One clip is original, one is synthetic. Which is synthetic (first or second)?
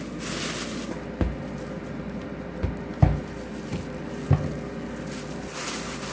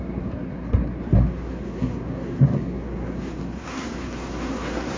second